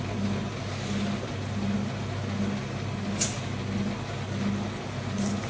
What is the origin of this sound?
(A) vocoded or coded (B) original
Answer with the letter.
B